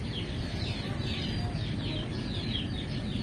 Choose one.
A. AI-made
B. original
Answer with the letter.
B